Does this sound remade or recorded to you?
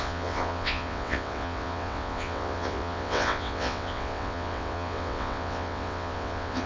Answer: remade